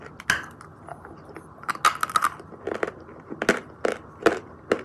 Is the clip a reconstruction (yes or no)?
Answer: no